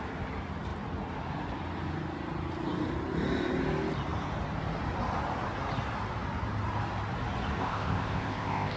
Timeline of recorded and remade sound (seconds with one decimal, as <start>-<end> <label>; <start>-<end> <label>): 0.0-7.6 recorded; 7.6-8.8 remade